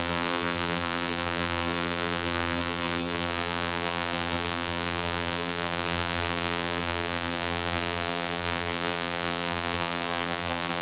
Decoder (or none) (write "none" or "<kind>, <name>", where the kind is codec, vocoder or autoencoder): vocoder, BigVGAN v2